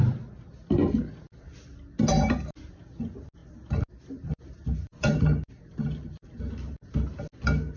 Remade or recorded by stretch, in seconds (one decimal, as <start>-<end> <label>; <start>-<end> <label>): 0.0-3.4 recorded; 3.4-6.4 remade; 6.4-7.8 recorded

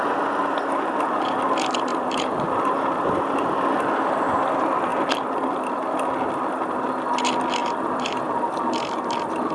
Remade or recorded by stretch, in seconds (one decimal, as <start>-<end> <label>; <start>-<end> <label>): 0.0-1.9 recorded; 1.9-3.2 remade; 3.2-7.6 recorded; 7.6-8.2 remade; 8.2-9.5 recorded